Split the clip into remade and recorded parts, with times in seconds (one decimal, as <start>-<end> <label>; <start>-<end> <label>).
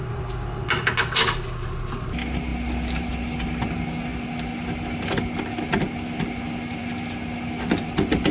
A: 0.0-8.3 recorded